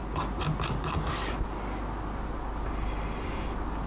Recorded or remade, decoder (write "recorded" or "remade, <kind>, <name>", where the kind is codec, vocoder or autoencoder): recorded